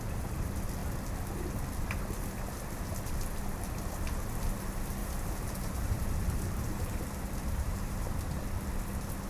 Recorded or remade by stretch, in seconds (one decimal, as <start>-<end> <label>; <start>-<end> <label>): 0.0-5.0 recorded; 5.0-8.1 remade; 8.1-9.3 recorded